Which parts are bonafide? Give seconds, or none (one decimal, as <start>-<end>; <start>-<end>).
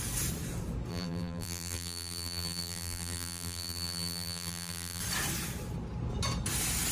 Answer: 0.0-0.9; 5.0-6.9